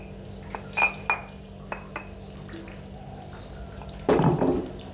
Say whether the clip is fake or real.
real